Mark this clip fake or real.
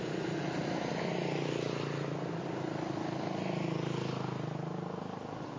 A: real